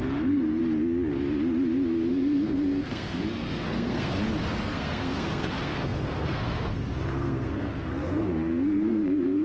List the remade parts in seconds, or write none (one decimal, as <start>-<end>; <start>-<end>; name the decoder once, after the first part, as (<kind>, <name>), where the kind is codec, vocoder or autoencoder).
0.0-0.6 (codec, SNAC); 2.1-4.1; 4.6-9.4